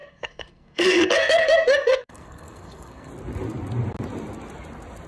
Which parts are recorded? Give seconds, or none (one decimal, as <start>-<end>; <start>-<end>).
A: 3.1-5.1